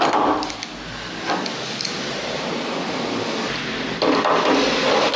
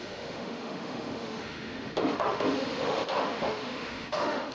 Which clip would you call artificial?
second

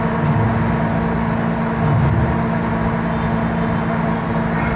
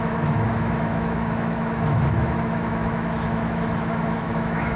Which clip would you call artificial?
second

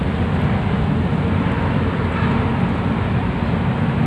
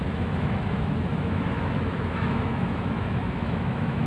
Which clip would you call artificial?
second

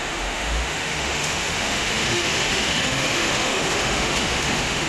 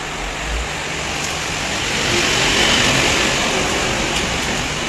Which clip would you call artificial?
first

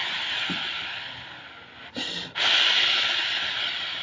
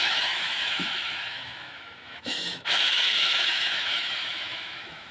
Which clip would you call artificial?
second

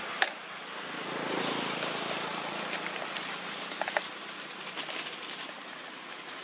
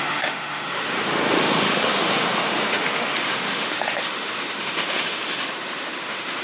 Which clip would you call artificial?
second